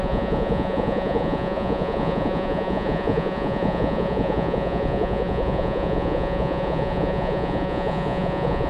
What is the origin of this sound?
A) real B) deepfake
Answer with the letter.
B